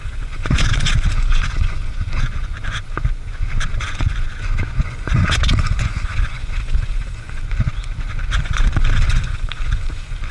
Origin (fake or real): fake